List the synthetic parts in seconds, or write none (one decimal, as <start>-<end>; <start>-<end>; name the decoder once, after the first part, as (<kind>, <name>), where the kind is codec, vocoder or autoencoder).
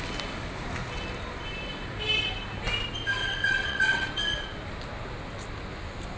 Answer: 3.2-4.1 (vocoder, WaveNeXt)